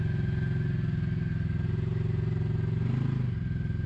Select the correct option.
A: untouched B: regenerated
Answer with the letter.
A